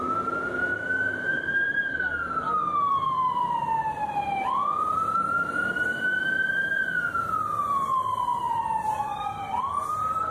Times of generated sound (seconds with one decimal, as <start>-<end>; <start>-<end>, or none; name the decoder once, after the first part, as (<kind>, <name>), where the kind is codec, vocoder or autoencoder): none